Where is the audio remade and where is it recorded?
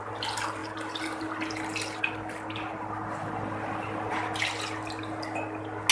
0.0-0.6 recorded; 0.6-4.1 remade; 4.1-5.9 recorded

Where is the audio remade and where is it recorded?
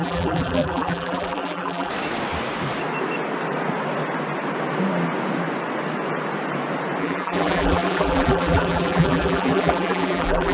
0.0-1.9 remade; 1.9-7.0 recorded; 7.0-10.5 remade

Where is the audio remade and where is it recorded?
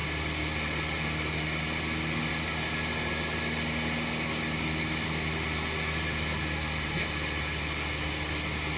0.0-8.8 recorded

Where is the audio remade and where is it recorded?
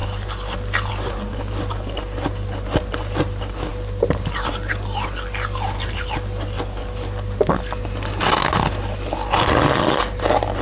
0.0-10.6 recorded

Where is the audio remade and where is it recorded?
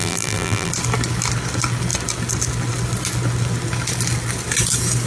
0.0-0.7 remade; 0.7-5.1 recorded